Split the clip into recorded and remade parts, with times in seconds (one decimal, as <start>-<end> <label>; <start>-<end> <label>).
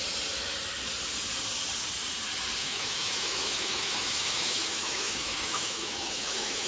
0.0-2.6 recorded; 2.6-6.7 remade